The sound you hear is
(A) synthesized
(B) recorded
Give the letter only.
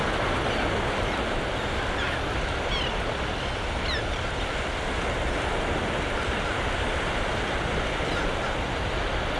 B